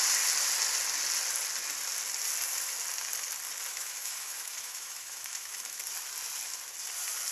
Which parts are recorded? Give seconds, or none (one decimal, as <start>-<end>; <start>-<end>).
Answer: 0.0-3.7; 5.8-7.3

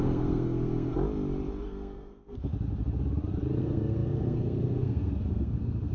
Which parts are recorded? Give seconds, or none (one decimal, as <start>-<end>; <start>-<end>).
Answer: 0.9-1.6; 2.5-3.6

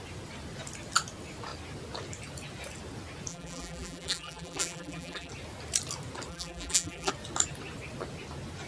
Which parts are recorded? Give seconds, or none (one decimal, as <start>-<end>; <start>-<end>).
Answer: 0.0-3.3; 5.3-6.3; 7.1-8.7

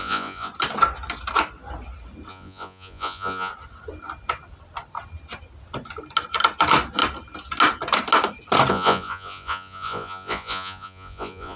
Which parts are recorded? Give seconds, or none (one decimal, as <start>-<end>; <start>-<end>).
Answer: 0.5-2.3; 3.5-8.7

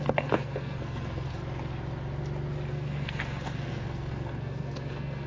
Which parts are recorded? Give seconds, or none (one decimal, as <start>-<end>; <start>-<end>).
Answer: 1.4-2.7

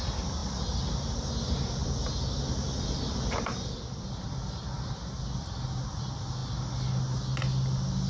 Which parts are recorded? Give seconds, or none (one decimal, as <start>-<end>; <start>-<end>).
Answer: 0.0-8.1

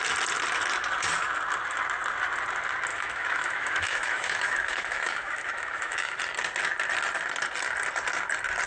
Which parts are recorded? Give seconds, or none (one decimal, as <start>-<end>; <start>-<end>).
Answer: 0.0-2.9; 6.2-8.7